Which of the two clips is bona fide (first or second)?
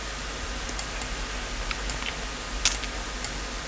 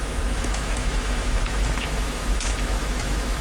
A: first